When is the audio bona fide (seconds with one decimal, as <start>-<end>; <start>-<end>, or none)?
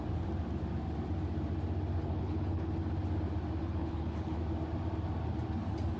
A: 0.0-2.0; 2.7-3.6; 4.4-6.0